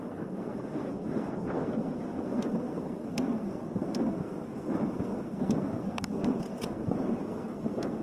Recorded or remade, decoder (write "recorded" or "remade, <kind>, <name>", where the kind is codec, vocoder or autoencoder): remade, codec, SNAC